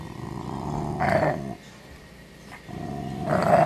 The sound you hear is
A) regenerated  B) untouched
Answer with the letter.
B